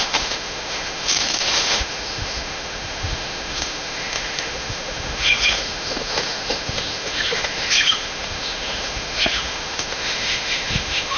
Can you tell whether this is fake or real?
fake